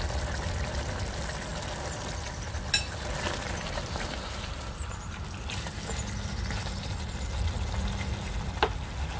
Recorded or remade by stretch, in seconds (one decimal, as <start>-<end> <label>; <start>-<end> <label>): 0.0-9.2 recorded